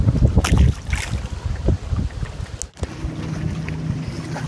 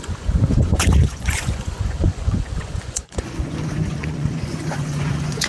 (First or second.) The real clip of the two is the first